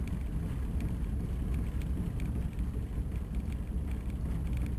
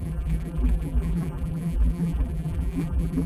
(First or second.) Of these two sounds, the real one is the first